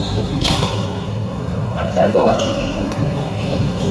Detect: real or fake fake